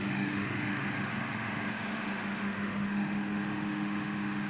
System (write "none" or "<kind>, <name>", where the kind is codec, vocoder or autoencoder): autoencoder, DAC-VAE